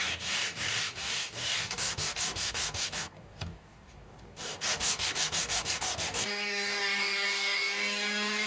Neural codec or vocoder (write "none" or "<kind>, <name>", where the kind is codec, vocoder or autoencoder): codec, DAC